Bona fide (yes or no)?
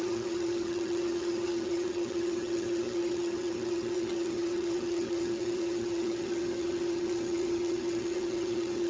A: no